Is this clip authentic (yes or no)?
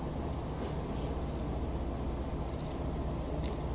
yes